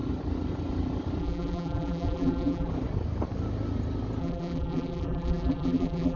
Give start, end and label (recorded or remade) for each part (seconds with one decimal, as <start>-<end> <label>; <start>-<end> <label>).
0.0-1.2 recorded; 1.2-2.7 remade; 2.7-4.2 recorded; 4.2-6.2 remade